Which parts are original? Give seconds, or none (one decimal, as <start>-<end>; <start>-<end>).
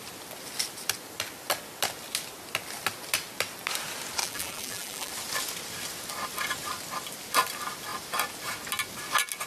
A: 0.0-4.2; 5.1-9.5